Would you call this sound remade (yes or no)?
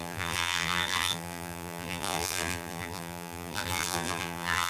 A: yes